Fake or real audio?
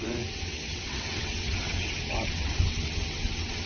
fake